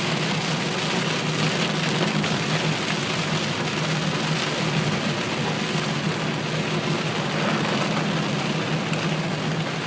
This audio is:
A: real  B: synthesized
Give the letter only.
A